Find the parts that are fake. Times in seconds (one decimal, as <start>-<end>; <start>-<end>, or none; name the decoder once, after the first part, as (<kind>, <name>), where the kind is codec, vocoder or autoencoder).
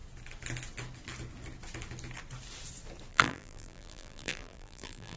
3.1-5.2 (vocoder, BigVGAN v2)